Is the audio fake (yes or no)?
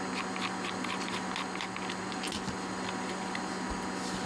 no